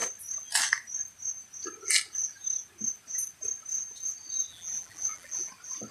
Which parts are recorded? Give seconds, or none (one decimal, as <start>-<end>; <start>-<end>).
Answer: 0.0-4.5; 5.5-5.9